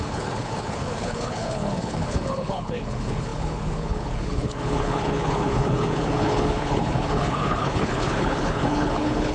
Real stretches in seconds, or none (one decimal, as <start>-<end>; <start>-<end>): none